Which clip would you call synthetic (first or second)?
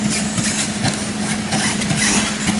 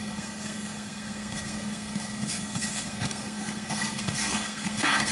second